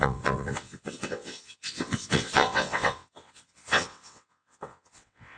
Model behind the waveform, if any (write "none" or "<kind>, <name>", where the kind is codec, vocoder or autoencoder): vocoder, WaveNeXt